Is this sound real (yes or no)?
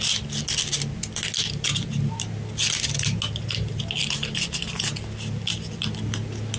yes